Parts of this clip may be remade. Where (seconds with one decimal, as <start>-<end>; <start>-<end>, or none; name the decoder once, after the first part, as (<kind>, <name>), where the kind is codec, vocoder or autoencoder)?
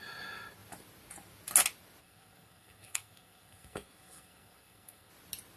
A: 2.0-5.1 (codec, SNAC)